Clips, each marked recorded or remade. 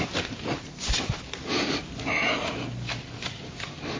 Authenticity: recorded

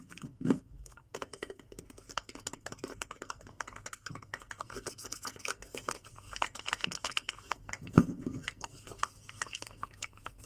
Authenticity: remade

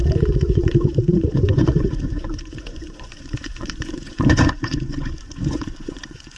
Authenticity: remade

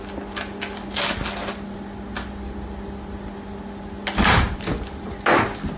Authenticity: recorded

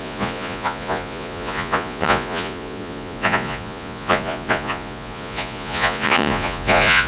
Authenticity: remade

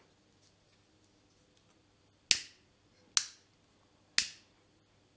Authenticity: recorded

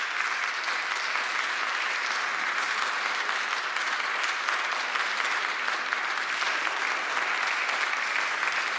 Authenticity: recorded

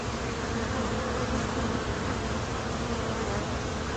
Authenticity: recorded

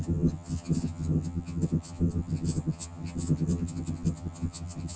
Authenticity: remade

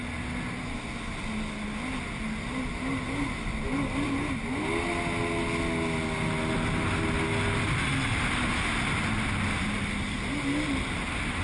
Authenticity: recorded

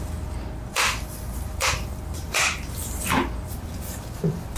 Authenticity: remade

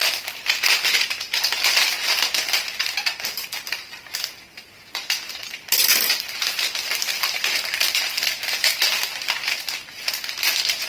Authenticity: remade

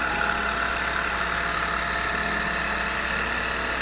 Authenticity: recorded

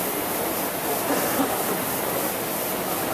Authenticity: recorded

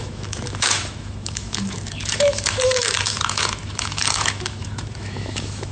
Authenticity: remade